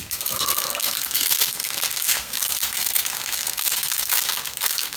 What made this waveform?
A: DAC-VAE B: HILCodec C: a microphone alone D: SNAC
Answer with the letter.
D